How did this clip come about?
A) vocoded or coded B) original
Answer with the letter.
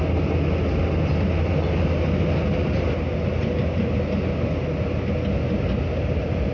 B